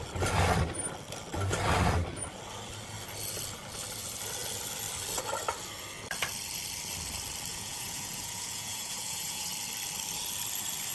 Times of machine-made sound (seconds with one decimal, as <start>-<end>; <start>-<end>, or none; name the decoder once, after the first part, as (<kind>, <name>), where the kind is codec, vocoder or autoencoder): 7.5-9.5 (vocoder, Vocos)